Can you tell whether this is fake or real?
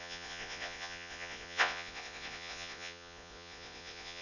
fake